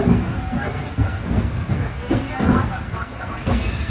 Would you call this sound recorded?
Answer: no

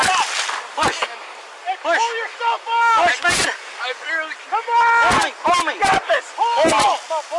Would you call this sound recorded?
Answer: yes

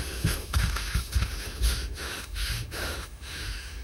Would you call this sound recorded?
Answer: no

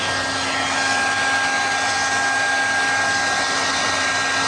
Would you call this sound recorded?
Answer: yes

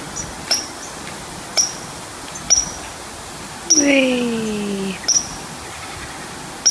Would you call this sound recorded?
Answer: yes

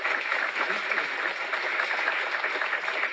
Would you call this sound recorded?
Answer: yes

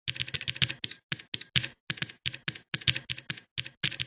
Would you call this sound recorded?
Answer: yes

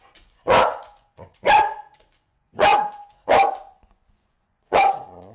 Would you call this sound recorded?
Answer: no